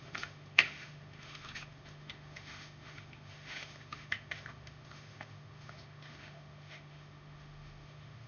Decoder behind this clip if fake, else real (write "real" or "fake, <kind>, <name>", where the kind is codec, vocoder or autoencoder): fake, autoencoder, DAC-VAE